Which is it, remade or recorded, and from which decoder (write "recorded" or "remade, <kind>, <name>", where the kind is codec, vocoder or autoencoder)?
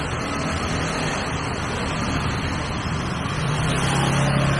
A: recorded